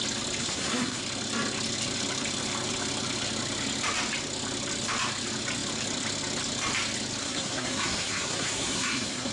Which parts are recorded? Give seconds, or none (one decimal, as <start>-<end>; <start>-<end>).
0.0-0.4; 1.0-7.2